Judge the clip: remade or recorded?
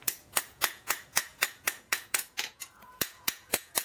remade